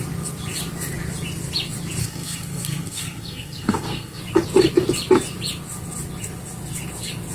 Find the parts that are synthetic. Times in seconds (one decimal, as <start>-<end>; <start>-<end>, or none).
2.0-4.2